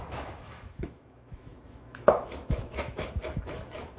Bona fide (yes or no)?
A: no